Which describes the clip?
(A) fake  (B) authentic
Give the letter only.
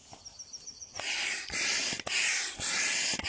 B